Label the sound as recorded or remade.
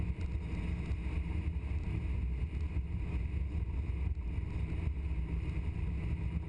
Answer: recorded